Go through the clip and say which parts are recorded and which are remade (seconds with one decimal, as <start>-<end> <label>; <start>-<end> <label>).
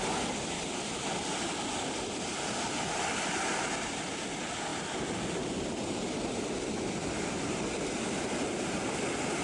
0.0-9.4 recorded